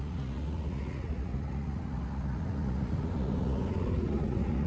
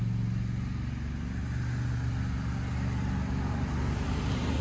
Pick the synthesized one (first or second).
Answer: first